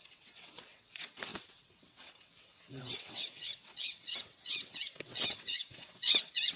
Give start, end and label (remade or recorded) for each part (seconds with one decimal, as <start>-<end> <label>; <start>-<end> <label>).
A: 0.0-6.6 remade